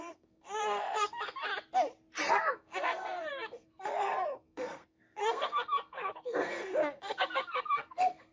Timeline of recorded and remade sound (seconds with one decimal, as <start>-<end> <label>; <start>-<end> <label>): 0.0-1.5 remade; 1.5-2.3 recorded; 2.3-8.3 remade